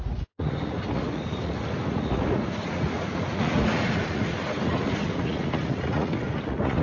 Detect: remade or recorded remade